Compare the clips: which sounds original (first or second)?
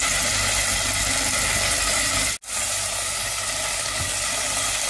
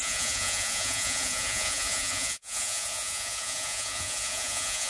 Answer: first